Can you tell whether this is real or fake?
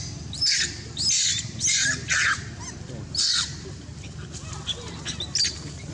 real